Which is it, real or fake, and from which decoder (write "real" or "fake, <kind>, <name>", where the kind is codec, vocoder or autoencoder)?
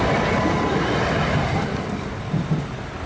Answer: real